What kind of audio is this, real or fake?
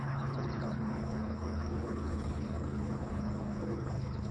fake